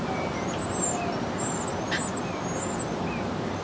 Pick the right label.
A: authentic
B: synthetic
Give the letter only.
A